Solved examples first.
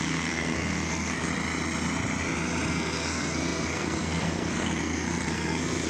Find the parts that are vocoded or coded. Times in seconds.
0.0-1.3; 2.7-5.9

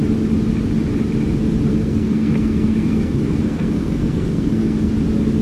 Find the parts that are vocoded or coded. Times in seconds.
1.7-4.9

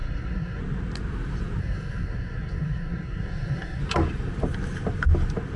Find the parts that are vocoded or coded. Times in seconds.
0.0-0.6; 1.6-3.8

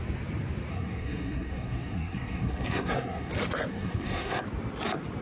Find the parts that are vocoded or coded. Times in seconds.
0.7-3.3; 3.7-4.4

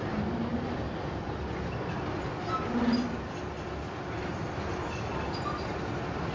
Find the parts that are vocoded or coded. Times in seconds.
none